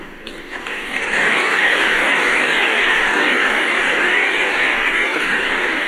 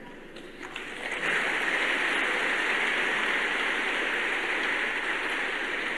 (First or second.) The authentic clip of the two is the second